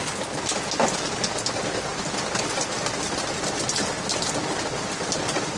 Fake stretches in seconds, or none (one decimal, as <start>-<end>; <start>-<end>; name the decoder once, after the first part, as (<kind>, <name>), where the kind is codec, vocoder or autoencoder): none